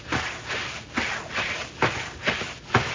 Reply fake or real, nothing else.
real